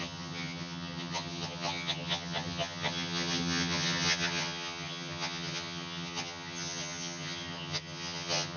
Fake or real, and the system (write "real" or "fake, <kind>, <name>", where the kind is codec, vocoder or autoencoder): fake, vocoder, HiFi-GAN